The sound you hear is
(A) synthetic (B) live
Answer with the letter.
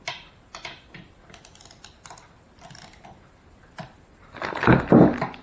B